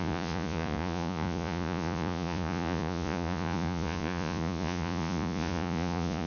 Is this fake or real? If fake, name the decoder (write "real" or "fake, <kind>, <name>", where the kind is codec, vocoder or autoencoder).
fake, vocoder, Vocos